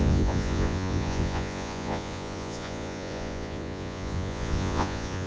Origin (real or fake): fake